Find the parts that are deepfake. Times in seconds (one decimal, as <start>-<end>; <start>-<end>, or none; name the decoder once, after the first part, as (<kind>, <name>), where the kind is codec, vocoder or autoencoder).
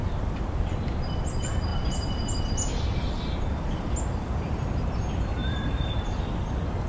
1.7-2.4 (vocoder, BigVGAN v2); 5.4-6.0